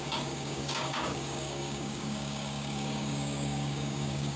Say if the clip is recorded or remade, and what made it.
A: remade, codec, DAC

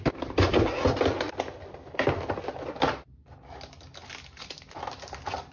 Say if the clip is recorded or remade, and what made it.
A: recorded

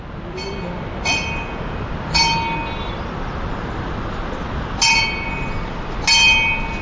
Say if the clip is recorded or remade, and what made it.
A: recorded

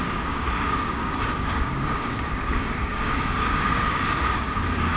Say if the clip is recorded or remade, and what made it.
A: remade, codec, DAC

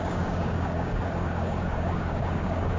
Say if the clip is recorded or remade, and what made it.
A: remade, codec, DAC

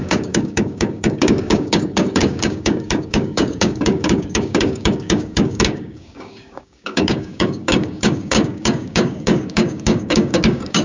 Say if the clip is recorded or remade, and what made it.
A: remade, codec, DAC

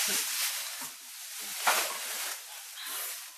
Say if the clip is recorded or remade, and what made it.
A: recorded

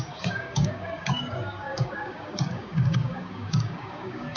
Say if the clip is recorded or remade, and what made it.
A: remade, codec, DAC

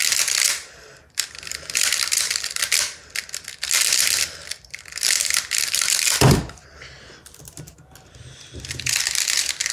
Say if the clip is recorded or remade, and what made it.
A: recorded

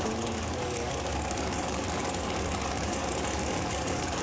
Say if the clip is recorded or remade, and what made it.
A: remade, codec, DAC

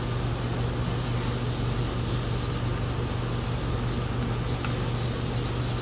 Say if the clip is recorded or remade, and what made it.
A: recorded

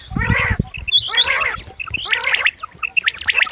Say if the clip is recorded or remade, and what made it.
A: recorded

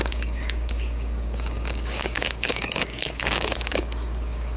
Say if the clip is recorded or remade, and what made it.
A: remade, codec, DAC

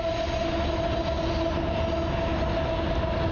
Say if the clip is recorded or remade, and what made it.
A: recorded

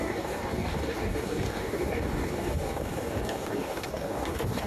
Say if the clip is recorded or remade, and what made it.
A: remade, codec, DAC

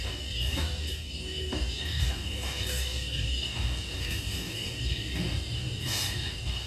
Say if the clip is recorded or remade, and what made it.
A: remade, codec, DAC